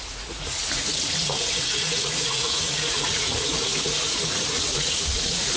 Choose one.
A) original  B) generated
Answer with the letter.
B